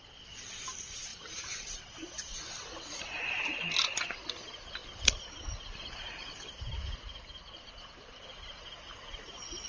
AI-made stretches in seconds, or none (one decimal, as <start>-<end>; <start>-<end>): 1.1-1.8